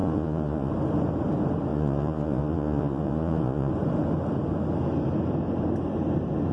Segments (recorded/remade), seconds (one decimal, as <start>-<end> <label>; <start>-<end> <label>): 0.0-0.7 remade; 0.7-1.7 recorded; 1.7-3.7 remade; 3.7-6.5 recorded